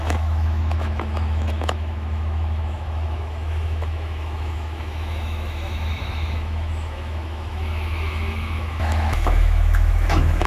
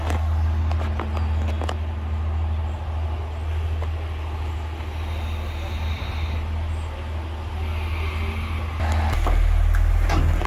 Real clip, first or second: second